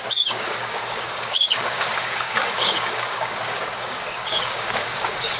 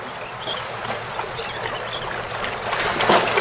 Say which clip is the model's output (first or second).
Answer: first